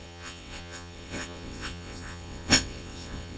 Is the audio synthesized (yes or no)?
yes